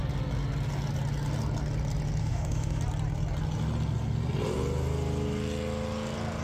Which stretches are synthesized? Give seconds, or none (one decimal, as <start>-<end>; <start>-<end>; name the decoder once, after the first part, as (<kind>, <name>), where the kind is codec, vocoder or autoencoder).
2.2-2.8 (autoencoder, DAC-VAE)